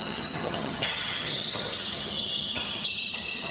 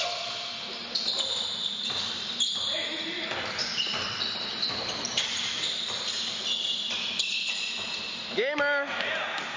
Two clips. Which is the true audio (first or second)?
second